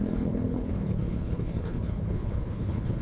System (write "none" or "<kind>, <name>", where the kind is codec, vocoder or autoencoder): codec, HILCodec